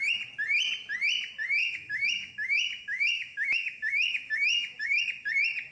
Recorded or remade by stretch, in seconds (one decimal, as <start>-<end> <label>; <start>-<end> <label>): 0.0-1.6 recorded; 1.6-5.0 remade; 5.0-5.7 recorded